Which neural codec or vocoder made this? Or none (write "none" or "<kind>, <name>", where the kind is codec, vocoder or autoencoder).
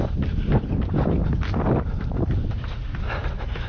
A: none